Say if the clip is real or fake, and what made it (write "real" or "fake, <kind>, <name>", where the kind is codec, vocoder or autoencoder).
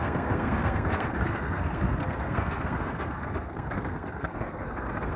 fake, codec, SNAC